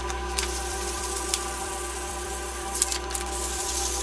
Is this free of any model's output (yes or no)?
no